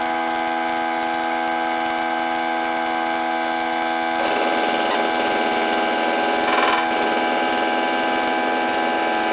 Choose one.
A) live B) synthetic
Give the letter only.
A